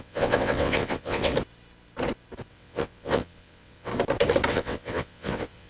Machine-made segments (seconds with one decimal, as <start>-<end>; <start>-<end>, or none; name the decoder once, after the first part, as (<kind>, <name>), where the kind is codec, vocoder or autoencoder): 0.0-1.3 (vocoder, WaveNeXt); 2.5-3.9; 4.5-5.7